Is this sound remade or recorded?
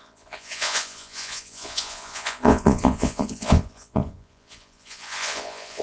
remade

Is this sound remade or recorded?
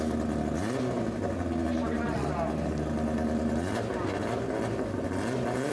recorded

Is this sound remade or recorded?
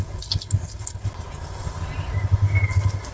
recorded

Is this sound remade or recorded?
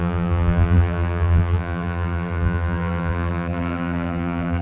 remade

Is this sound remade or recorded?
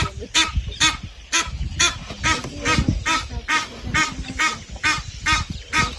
recorded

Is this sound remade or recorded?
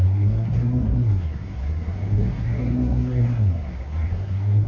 remade